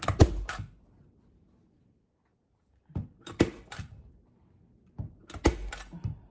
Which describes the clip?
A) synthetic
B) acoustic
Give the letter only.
B